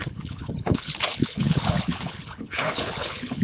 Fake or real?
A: fake